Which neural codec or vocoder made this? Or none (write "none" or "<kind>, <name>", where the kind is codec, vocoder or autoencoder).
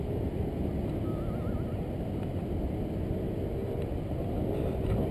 none